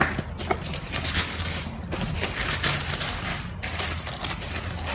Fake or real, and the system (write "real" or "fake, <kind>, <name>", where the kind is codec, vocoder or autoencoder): real